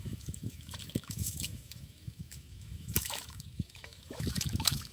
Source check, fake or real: fake